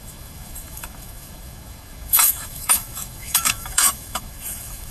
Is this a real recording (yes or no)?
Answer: no